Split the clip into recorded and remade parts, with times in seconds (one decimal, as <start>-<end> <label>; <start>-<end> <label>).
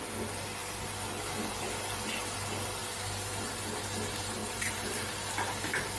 0.0-2.8 recorded; 2.8-3.4 remade; 3.4-4.4 recorded; 4.4-5.1 remade; 5.1-6.0 recorded